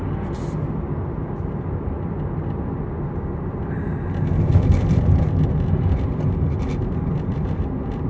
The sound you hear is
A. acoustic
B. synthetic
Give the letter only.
A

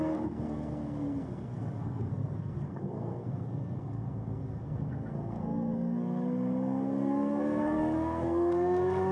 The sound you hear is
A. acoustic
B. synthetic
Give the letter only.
B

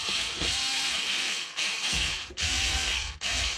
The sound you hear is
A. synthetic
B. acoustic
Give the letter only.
A